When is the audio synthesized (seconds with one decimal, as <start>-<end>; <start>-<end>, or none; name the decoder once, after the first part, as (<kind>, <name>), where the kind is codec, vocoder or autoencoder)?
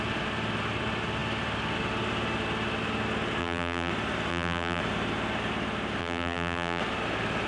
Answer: 3.4-3.9 (vocoder, BigVGAN v2); 4.3-4.8; 6.0-6.8